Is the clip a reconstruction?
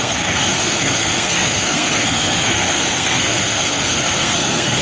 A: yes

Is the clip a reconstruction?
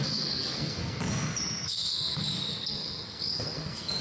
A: yes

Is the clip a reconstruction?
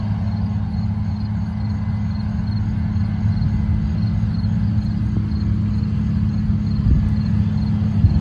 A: no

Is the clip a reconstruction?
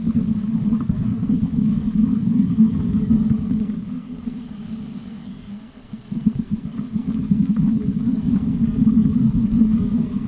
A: yes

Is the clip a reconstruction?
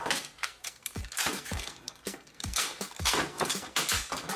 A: yes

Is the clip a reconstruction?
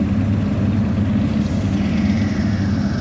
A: no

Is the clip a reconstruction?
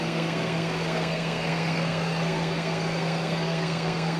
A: yes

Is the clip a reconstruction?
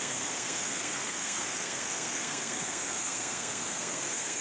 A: yes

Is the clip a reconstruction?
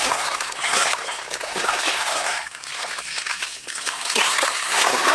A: yes